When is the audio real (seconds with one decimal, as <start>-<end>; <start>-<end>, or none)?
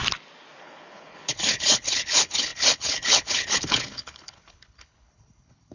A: 0.0-0.6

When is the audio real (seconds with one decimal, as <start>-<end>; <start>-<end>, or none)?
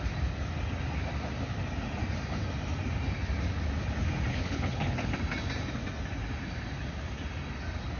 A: 0.0-4.3; 5.1-8.0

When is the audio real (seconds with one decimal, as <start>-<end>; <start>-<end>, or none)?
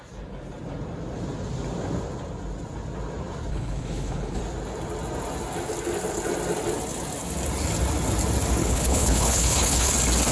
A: 0.0-3.5; 4.4-8.6; 9.9-10.3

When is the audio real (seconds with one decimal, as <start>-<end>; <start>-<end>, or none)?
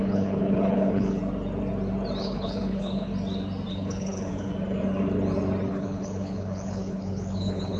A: 1.2-2.2; 3.1-3.7; 4.5-5.7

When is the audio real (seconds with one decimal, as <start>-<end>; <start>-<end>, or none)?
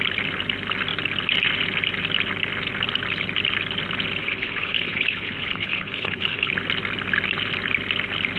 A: 0.0-4.2; 6.5-8.4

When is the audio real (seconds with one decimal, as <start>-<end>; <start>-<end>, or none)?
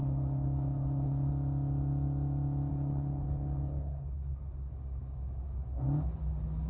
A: 1.3-2.7; 4.7-6.7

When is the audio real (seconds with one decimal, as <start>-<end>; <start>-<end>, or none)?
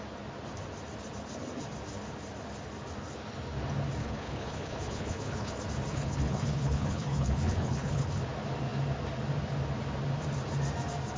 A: 0.0-4.0; 5.5-5.9; 8.2-11.2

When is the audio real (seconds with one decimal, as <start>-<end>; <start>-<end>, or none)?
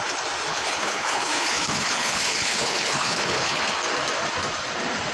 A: 0.0-0.5; 3.6-5.1